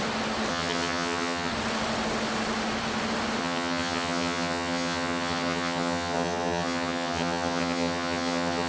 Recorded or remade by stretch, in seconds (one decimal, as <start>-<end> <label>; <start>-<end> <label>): 0.0-0.5 recorded; 0.5-1.5 remade; 1.5-3.4 recorded; 3.4-8.7 remade